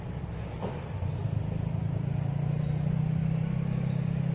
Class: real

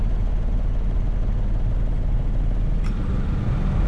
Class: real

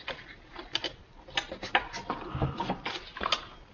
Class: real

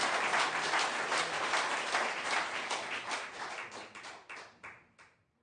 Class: real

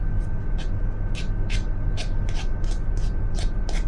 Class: real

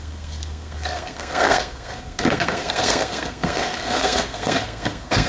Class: fake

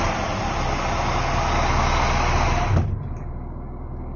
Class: real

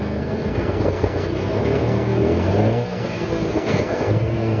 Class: fake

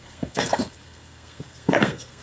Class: fake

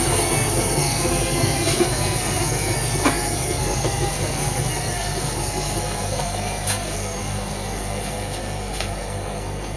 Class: fake